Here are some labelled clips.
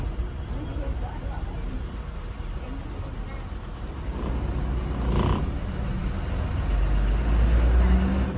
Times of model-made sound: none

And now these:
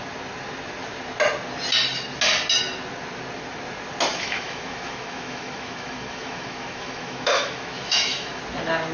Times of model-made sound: 4.1-8.4 (autoencoder, DAC-VAE)